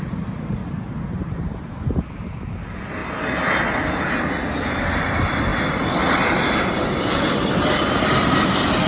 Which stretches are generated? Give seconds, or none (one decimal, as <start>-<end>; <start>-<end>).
0.0-0.6; 1.1-3.0; 4.7-5.5; 6.7-8.9

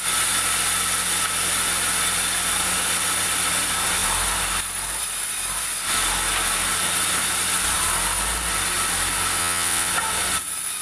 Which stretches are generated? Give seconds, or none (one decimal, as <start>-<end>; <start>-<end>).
9.4-9.9

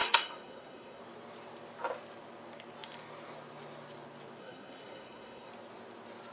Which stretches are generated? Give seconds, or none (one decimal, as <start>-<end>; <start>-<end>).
0.0-1.0; 4.4-5.5

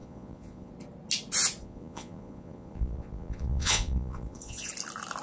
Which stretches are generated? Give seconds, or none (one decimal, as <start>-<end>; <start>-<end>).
0.0-0.7; 1.6-4.7

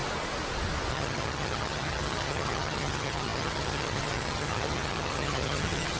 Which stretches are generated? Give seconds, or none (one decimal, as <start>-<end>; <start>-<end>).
0.9-6.0

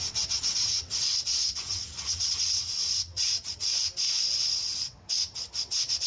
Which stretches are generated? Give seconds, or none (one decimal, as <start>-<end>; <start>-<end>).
0.0-3.7; 4.5-6.1

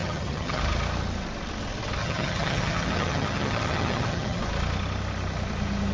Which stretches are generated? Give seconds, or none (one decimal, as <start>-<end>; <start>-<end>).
0.0-0.6; 2.0-4.4